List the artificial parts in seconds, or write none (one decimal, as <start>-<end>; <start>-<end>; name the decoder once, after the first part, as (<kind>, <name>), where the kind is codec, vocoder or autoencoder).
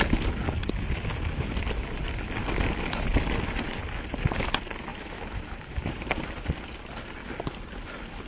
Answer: 4.9-6.2 (vocoder, BigVGAN v2)